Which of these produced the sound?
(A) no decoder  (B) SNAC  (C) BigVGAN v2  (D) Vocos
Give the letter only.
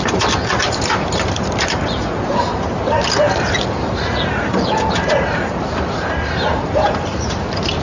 C